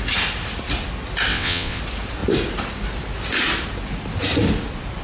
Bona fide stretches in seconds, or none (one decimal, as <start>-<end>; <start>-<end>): 0.0-1.3; 1.8-5.0